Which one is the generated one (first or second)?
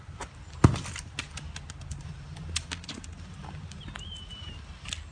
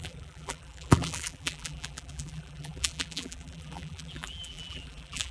second